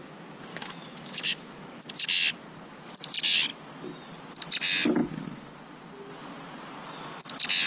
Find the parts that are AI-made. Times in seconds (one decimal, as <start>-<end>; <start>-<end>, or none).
0.5-1.8